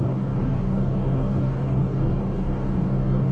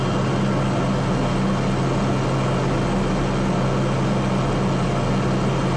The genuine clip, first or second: second